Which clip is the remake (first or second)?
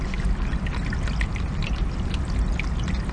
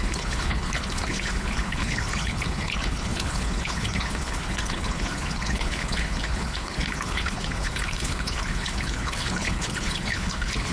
second